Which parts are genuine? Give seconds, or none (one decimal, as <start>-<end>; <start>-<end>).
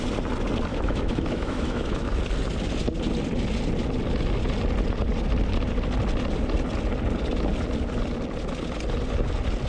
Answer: 0.0-0.7; 2.2-9.7